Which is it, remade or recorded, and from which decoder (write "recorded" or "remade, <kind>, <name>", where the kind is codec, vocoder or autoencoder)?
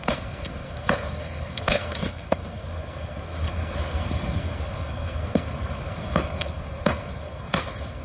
remade, codec, SNAC